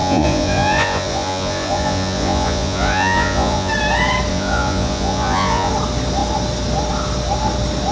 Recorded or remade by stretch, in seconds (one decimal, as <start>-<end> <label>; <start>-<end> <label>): 0.0-3.7 remade; 3.7-4.3 recorded; 4.3-5.7 remade; 5.7-7.9 recorded

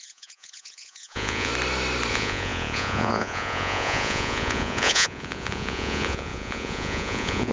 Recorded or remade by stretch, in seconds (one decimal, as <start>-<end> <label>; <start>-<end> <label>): 0.0-1.5 remade; 1.5-2.1 recorded; 2.1-7.5 remade

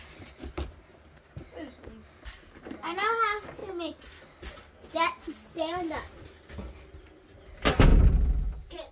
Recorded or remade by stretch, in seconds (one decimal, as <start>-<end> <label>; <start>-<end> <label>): 0.0-8.9 recorded

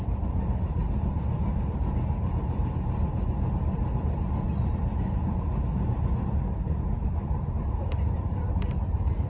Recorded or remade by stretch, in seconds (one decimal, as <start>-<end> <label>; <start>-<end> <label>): 0.0-9.3 recorded

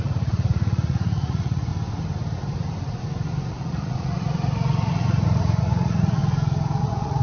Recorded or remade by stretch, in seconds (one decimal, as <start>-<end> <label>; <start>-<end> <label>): 0.0-1.7 remade; 1.7-3.5 recorded; 3.5-6.2 remade; 6.2-6.8 recorded; 6.8-7.2 remade